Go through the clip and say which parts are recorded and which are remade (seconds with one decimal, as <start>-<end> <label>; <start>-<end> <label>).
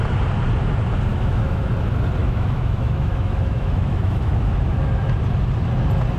0.0-1.1 recorded; 1.1-1.7 remade; 1.7-2.2 recorded; 2.2-4.3 remade; 4.3-6.2 recorded